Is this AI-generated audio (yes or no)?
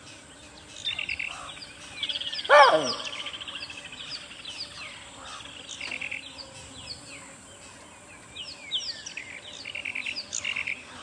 no